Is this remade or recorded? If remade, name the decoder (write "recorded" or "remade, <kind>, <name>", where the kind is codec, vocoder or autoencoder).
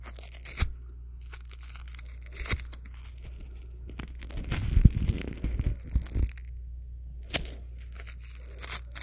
recorded